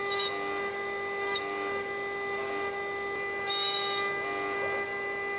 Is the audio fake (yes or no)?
no